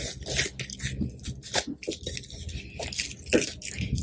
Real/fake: real